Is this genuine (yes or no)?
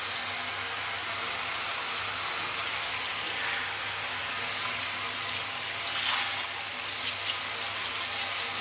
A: yes